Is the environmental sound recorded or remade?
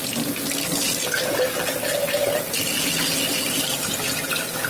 recorded